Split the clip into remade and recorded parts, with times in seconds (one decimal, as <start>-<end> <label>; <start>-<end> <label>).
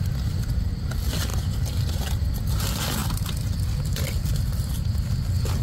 0.0-5.6 recorded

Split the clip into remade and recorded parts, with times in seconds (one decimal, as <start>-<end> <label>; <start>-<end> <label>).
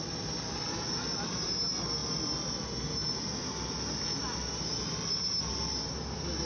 0.0-6.5 recorded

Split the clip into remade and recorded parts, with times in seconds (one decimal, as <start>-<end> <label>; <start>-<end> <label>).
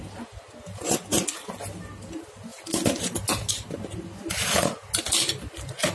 0.0-5.9 recorded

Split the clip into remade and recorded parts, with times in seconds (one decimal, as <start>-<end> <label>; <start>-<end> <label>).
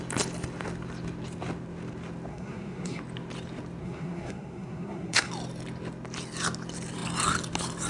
0.0-2.3 recorded; 2.3-3.0 remade; 3.0-3.8 recorded; 3.8-5.3 remade; 5.3-7.9 recorded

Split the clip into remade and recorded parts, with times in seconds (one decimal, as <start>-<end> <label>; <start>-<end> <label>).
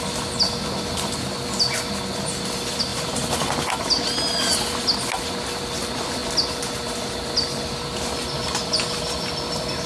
0.0-9.9 recorded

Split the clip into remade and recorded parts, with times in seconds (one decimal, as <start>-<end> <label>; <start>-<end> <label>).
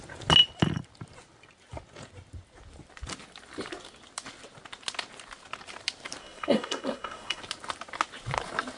0.0-6.2 recorded; 6.2-7.4 remade; 7.4-8.8 recorded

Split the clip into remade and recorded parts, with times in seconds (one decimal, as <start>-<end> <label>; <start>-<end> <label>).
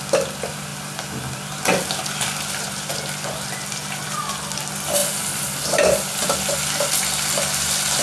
0.0-8.0 recorded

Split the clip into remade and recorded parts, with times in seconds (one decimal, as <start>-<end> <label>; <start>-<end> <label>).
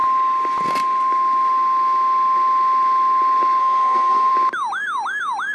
0.0-3.6 recorded; 3.6-4.3 remade; 4.3-5.5 recorded